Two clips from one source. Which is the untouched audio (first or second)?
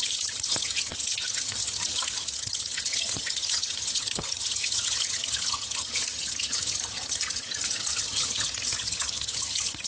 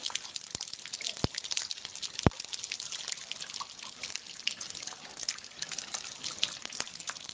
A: second